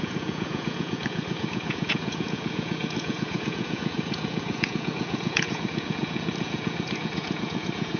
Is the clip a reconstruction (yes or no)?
yes